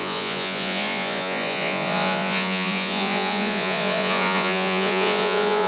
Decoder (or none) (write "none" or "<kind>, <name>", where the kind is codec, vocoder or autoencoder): vocoder, Vocos